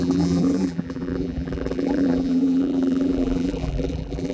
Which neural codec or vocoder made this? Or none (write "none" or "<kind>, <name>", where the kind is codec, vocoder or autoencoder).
vocoder, BigVGAN v2